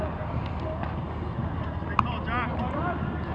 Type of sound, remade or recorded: recorded